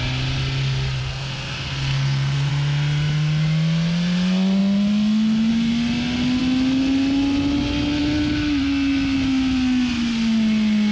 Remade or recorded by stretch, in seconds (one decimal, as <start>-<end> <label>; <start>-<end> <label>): 0.0-1.0 recorded; 1.0-2.5 remade; 2.5-10.9 recorded

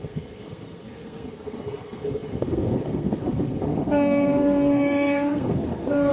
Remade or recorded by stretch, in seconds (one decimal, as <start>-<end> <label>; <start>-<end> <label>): 0.0-6.1 remade

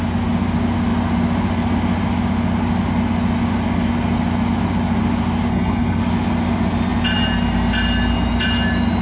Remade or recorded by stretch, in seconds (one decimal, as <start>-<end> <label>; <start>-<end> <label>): 0.0-5.5 recorded; 5.5-6.0 remade; 6.0-9.0 recorded

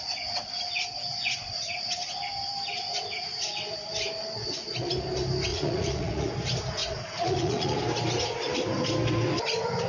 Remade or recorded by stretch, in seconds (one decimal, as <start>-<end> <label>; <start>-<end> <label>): 0.0-5.5 recorded; 5.5-6.3 remade; 6.3-6.8 recorded; 6.8-7.8 remade; 7.8-9.9 recorded

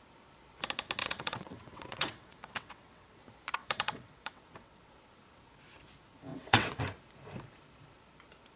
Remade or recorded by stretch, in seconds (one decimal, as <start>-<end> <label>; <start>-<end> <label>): 0.0-1.0 recorded; 1.0-3.2 remade; 3.2-3.6 recorded; 3.6-4.9 remade; 4.9-6.3 recorded; 6.3-6.8 remade; 6.8-8.6 recorded

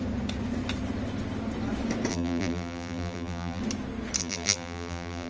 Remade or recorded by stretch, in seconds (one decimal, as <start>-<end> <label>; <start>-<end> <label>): 0.0-2.1 recorded; 2.1-3.6 remade; 3.6-4.2 recorded; 4.2-5.3 remade